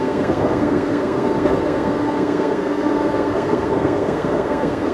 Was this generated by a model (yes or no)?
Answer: yes